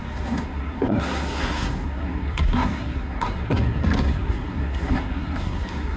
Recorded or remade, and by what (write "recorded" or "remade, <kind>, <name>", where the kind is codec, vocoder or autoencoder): remade, codec, SNAC